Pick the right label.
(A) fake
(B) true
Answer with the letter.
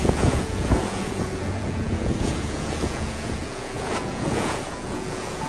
A